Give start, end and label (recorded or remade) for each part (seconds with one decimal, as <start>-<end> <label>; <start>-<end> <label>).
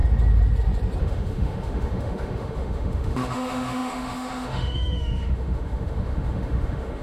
0.0-1.0 recorded; 1.0-7.0 remade